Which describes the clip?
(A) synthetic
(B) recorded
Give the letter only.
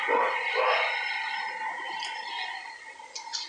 B